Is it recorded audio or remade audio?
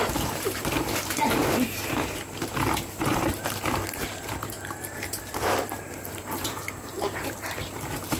remade